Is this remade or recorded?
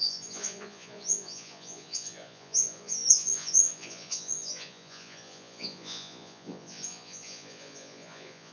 remade